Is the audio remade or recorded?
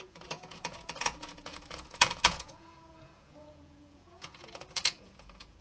remade